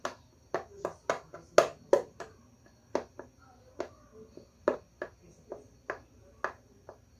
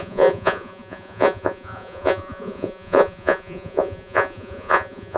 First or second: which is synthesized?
second